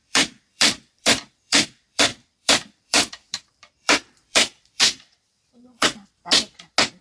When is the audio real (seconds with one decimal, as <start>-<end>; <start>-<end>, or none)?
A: 6.2-7.0